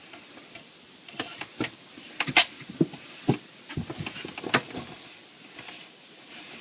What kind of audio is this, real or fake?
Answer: real